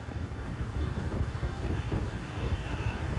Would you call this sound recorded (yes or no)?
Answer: no